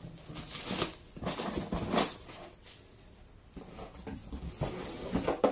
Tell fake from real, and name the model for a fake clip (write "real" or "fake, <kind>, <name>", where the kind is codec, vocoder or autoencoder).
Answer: real